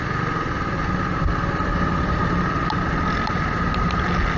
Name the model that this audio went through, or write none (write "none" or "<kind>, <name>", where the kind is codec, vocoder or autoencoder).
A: none